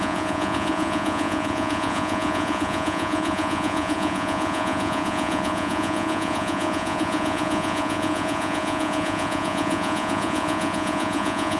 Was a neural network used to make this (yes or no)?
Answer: yes